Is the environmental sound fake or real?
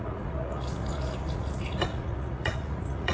fake